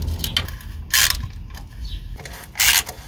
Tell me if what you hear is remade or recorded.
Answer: recorded